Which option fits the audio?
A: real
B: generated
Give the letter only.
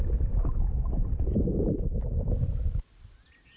A